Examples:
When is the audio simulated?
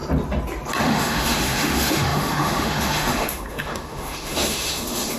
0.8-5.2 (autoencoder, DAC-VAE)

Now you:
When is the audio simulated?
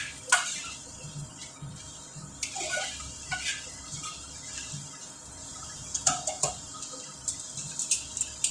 5.0-6.5 (vocoder, Vocos)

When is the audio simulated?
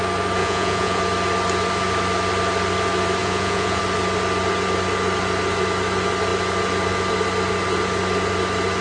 0.4-1.0 (vocoder, Vocos); 3.2-3.8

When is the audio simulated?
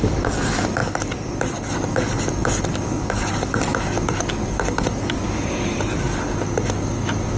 0.0-7.4 (codec, DAC)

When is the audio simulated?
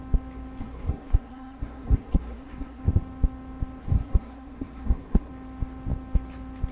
0.6-2.8 (codec, SNAC); 3.8-5.3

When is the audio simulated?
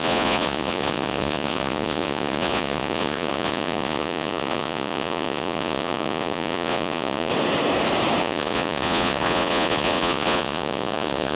0.0-7.3 (vocoder, Vocos); 8.2-11.4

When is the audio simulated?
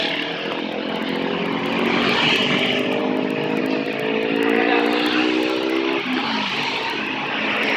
none